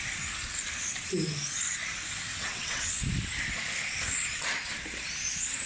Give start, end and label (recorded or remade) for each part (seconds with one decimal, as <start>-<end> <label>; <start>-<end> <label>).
0.0-2.3 recorded; 2.3-3.0 remade; 3.0-5.7 recorded